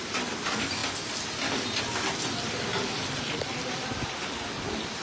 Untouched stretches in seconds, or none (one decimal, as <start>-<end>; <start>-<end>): 0.0-5.0